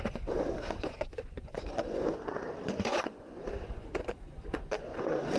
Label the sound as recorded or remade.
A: remade